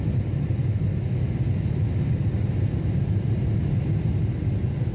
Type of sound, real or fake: real